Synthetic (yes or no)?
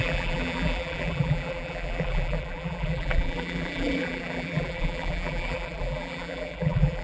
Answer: yes